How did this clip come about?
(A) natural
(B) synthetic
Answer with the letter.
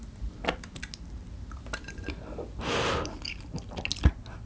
A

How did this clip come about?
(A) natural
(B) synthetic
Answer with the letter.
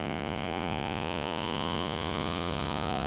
B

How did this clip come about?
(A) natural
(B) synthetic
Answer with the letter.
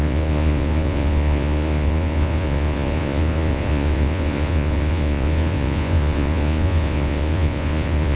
B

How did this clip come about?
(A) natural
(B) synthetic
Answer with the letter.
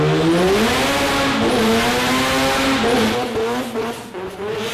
A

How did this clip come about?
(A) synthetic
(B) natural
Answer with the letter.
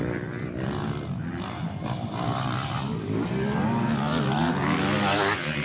B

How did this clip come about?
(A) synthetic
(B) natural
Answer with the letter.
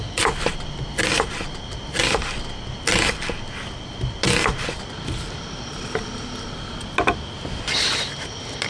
B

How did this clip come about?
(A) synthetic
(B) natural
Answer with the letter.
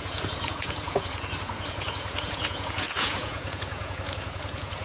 A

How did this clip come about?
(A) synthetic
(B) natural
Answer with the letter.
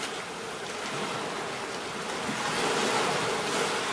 B